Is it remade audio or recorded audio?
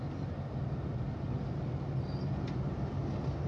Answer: recorded